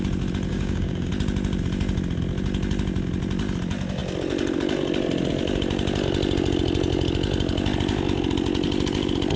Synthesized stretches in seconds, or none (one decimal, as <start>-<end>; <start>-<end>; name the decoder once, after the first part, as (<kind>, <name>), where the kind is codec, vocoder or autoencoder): 0.5-1.1 (codec, DAC)